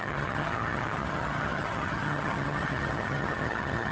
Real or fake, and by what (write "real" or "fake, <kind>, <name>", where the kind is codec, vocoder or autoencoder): fake, vocoder, HiFi-GAN